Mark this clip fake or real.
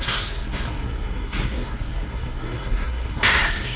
fake